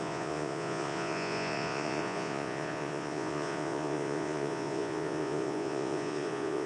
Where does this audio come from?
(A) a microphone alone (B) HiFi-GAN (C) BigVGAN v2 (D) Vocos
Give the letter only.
D